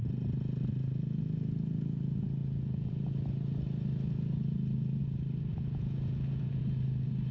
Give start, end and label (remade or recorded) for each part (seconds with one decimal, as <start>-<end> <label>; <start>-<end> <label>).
0.0-2.4 recorded; 2.4-2.9 remade; 2.9-5.5 recorded; 5.5-6.6 remade; 6.6-7.3 recorded